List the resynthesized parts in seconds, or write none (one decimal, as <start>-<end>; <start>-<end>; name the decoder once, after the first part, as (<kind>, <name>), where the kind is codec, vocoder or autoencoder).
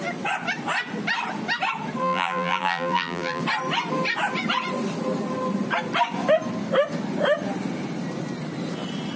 2.0-3.4 (vocoder, BigVGAN v2)